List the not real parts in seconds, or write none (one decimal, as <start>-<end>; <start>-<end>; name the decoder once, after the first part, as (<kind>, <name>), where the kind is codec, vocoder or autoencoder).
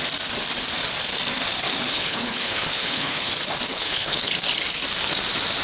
1.9-3.3 (codec, HILCodec); 3.7-4.3